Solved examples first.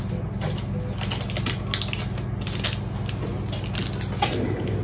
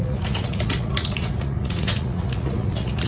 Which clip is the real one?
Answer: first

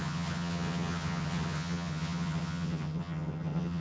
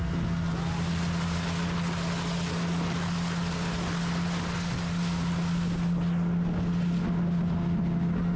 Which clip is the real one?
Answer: second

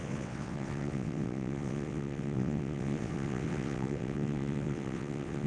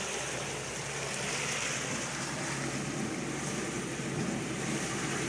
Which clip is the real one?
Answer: second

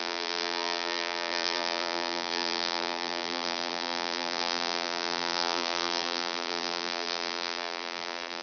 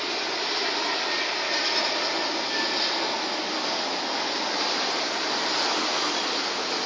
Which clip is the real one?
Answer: second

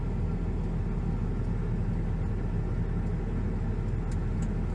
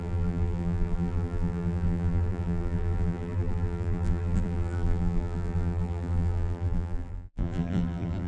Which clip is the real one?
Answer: first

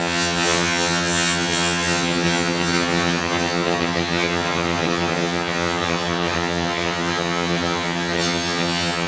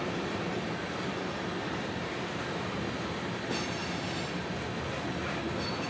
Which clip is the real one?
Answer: second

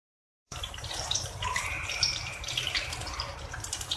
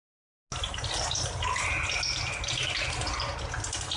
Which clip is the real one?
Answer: second